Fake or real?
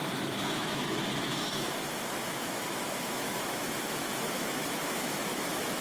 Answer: fake